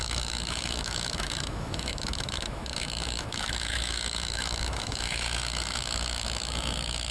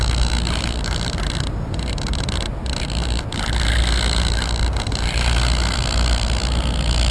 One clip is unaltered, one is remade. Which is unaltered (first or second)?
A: second